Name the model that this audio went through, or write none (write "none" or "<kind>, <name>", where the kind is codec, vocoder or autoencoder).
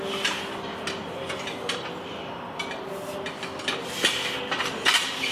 none